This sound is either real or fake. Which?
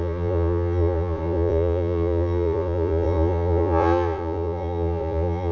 fake